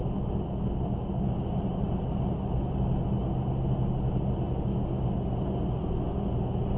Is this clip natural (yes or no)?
yes